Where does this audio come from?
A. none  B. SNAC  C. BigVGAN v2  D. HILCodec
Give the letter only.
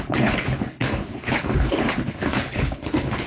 D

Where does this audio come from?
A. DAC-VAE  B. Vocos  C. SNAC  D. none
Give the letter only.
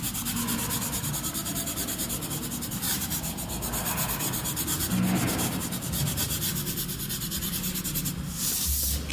D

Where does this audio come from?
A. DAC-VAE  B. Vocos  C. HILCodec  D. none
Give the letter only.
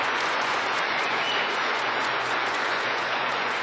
B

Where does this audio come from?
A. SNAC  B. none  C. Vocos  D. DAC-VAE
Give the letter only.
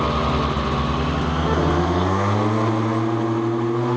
B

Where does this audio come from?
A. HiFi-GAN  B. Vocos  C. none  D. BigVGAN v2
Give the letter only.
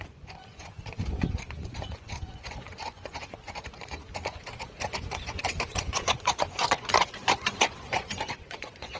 B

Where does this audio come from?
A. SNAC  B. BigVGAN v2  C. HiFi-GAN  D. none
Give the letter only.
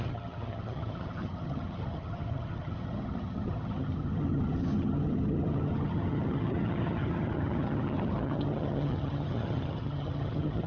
C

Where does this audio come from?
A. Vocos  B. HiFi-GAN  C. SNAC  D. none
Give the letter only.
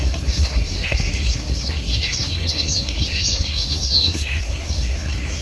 C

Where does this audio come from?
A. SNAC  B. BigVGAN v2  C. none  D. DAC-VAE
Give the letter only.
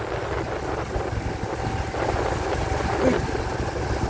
C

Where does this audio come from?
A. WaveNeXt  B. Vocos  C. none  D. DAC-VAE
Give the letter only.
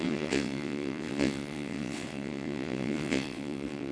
A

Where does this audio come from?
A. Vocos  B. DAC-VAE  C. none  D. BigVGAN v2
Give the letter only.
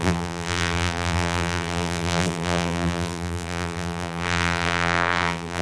D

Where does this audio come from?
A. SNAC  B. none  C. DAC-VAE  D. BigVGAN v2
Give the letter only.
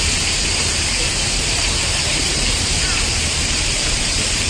D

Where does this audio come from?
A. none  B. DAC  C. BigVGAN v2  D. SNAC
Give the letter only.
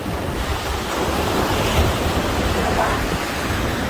C